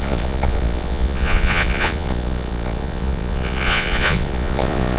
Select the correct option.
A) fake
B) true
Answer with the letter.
A